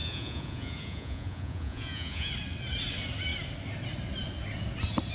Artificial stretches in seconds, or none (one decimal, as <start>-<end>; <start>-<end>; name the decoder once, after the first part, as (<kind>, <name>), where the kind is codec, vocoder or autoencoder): 0.0-2.3 (vocoder, Vocos)